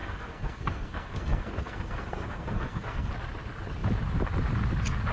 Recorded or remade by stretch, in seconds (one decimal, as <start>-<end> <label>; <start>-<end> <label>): 0.0-3.1 remade; 3.1-5.1 recorded